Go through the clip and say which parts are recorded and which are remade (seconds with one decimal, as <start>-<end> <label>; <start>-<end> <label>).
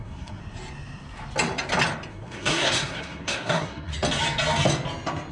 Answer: 0.0-0.4 remade; 0.4-2.1 recorded; 2.1-3.9 remade; 3.9-5.3 recorded